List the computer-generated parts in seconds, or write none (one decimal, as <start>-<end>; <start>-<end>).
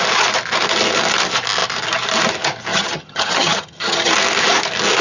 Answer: 2.7-4.1